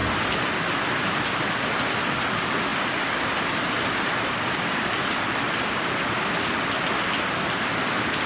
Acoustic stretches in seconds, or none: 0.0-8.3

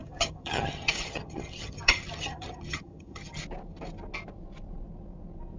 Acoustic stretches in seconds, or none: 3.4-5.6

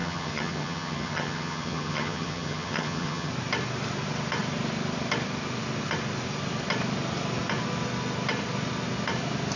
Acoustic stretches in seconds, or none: 3.3-9.6

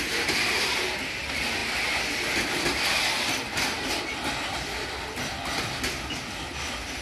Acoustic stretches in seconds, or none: 0.0-7.0